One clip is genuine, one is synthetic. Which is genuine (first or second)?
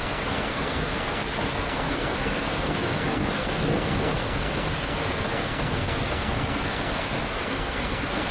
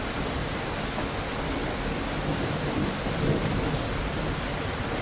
second